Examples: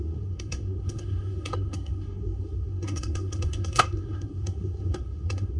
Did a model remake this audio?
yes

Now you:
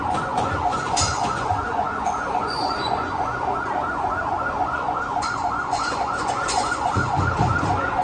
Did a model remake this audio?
yes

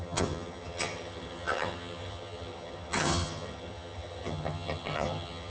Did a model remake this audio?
yes